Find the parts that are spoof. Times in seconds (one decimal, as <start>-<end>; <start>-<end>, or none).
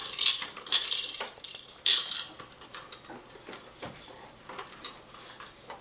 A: 0.0-2.3